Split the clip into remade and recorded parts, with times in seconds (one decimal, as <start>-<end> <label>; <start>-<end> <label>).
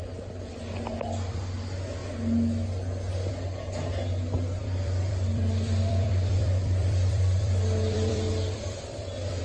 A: 0.0-4.6 recorded; 4.6-9.4 remade